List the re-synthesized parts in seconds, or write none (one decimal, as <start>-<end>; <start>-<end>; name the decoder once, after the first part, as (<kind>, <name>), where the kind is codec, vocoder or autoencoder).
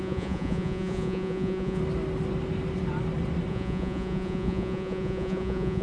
0.0-1.8 (vocoder, Vocos); 3.5-5.8